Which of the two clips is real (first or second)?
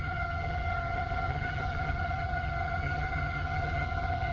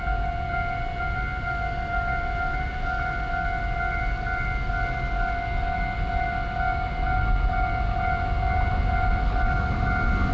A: second